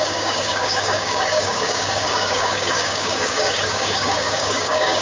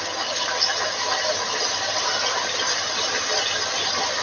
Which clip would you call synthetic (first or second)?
first